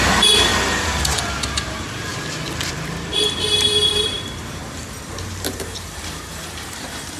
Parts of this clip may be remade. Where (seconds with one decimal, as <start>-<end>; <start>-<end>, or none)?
0.0-0.5; 1.5-2.1; 2.7-4.6; 5.6-7.2